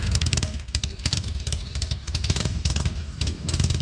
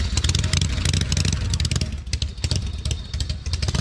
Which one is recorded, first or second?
second